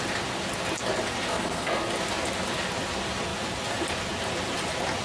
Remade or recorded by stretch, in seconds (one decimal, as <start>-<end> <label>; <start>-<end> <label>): 0.0-1.3 recorded; 1.3-1.9 remade; 1.9-5.0 recorded